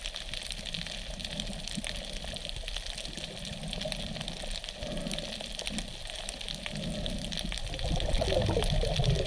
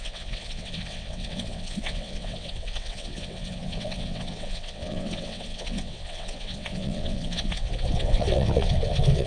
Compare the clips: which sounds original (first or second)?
first